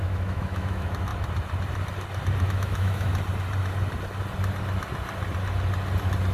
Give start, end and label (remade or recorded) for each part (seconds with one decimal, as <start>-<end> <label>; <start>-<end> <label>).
0.0-1.1 remade; 1.1-2.4 recorded; 2.4-3.1 remade; 3.1-6.3 recorded